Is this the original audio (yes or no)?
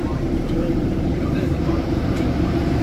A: no